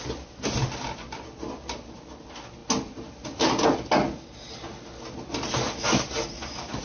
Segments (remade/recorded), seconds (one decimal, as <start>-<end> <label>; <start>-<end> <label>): 0.0-6.8 recorded